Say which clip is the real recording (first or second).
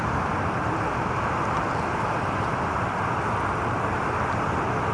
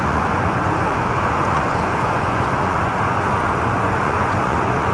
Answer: first